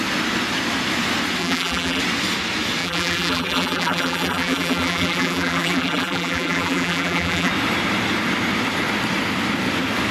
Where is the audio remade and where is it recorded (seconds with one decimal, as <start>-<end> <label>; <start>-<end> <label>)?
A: 0.0-1.4 recorded; 1.4-2.0 remade; 2.0-2.8 recorded; 2.8-7.5 remade; 7.5-10.1 recorded